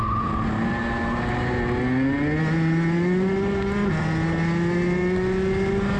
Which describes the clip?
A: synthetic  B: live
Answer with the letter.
B